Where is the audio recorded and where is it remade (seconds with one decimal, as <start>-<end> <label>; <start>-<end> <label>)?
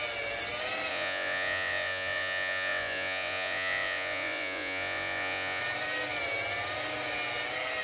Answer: 0.0-0.9 recorded; 0.9-5.6 remade; 5.6-7.8 recorded